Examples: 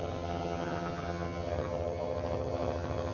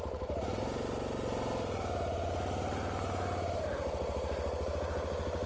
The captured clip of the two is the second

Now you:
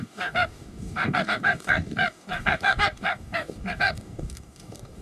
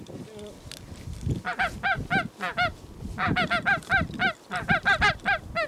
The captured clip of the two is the second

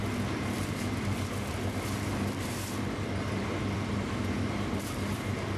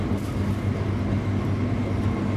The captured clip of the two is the second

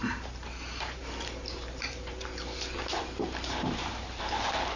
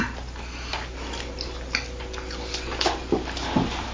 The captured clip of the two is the second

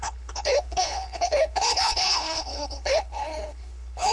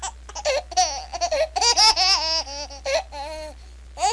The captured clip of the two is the second